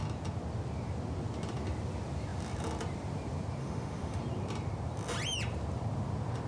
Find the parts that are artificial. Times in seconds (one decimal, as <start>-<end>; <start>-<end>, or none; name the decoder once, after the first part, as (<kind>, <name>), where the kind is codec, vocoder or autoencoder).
3.6-4.2 (autoencoder, DAC-VAE)